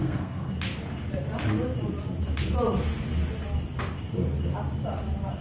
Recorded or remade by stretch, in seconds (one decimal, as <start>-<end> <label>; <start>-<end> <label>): 0.0-0.5 remade; 0.5-5.4 recorded